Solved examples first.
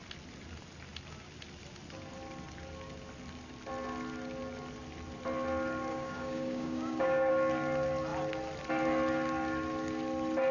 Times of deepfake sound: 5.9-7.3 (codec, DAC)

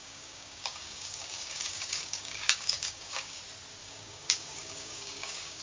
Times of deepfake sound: 0.0-3.4 (codec, DAC); 3.8-5.6